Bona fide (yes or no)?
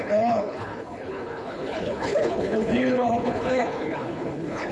no